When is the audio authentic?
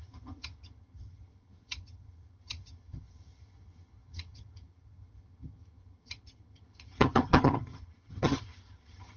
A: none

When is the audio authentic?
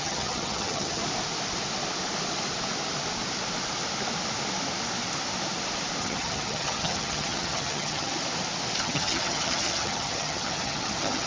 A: 1.0-6.0; 8.1-8.8